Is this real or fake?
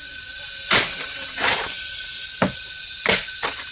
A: real